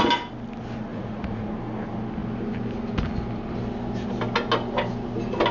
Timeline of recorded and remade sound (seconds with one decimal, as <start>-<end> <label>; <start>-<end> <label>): 0.0-0.9 recorded; 0.9-1.5 remade; 1.5-5.5 recorded

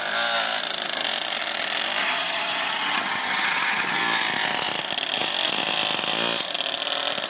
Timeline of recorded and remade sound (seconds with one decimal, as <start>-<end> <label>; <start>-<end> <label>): 0.0-2.0 recorded; 2.0-4.0 remade; 4.0-7.3 recorded

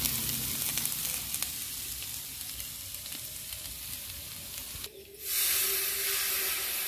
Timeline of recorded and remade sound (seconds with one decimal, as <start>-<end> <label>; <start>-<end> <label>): 0.0-6.9 recorded

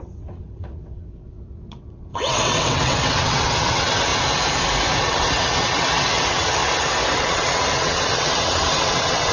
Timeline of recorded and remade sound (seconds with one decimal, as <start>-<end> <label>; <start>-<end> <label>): 0.0-4.1 remade; 4.1-4.9 recorded; 4.9-6.6 remade; 6.6-7.2 recorded; 7.2-9.3 remade

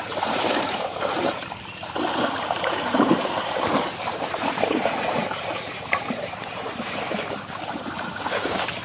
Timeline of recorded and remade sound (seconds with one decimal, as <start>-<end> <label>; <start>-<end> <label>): 0.0-1.4 remade; 1.4-2.9 recorded; 2.9-8.8 remade